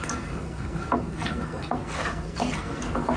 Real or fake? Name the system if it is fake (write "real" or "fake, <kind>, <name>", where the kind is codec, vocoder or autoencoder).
fake, codec, SNAC